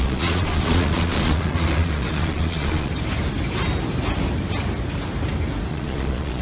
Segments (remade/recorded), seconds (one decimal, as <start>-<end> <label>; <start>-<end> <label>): 0.0-2.9 remade; 2.9-5.7 recorded; 5.7-6.4 remade